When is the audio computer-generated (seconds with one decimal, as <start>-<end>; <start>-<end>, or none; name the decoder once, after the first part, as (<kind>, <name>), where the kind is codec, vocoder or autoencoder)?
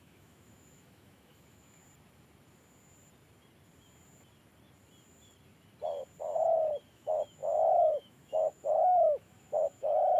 0.0-1.8 (autoencoder, DAC-VAE); 6.9-10.2